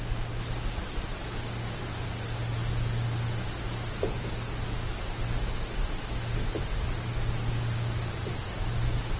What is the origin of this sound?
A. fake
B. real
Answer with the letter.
B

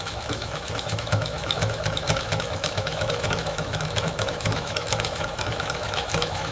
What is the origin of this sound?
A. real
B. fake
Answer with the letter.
B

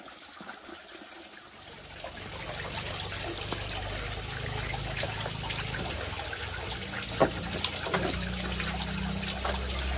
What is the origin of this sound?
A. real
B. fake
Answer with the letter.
A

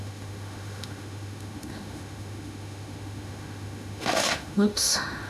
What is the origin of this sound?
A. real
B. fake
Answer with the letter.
B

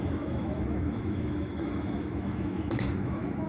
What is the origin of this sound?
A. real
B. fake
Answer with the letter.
B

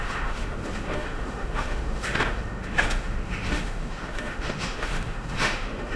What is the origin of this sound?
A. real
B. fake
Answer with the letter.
B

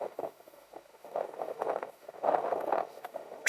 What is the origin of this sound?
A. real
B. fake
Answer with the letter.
B